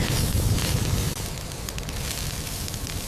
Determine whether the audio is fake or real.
real